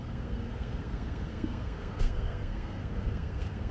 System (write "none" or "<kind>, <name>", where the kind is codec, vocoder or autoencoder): codec, SNAC